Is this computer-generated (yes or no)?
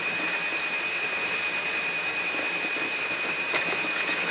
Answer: no